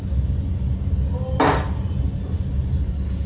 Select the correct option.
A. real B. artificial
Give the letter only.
A